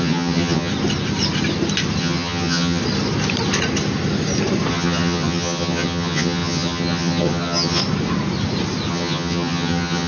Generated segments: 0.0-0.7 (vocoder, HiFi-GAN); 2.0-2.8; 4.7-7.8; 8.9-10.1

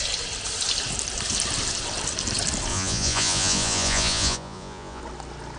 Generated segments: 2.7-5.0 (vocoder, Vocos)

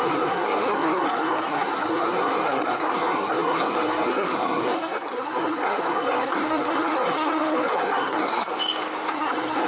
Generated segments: 0.0-8.5 (codec, SNAC); 9.1-9.7

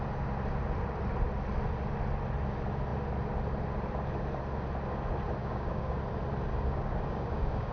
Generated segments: 5.4-6.0 (codec, DAC); 6.5-7.7

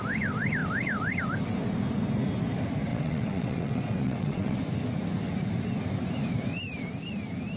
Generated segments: 2.9-4.6 (vocoder, WaveNeXt)